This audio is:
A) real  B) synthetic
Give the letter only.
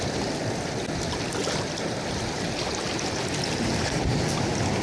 A